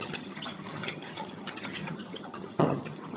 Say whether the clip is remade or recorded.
remade